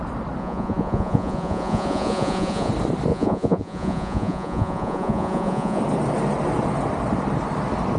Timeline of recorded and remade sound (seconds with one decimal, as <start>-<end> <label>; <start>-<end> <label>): 0.0-0.4 recorded; 0.4-2.7 remade; 2.7-3.1 recorded; 3.1-5.8 remade; 5.8-8.0 recorded